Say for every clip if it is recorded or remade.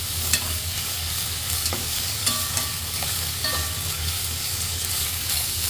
remade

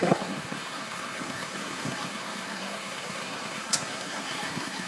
remade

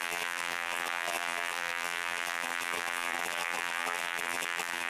remade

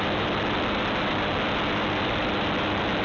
recorded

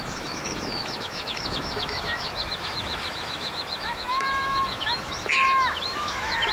remade